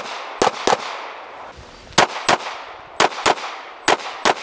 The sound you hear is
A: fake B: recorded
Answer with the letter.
B